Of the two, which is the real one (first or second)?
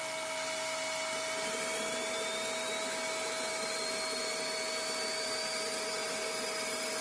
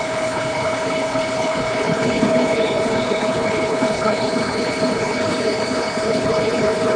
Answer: first